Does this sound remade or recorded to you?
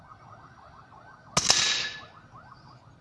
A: recorded